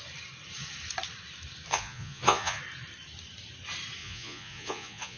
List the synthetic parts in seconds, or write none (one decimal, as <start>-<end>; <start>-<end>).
1.7-2.6; 4.0-5.2